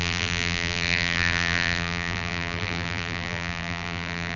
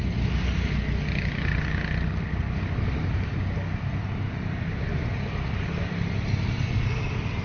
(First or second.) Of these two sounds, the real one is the second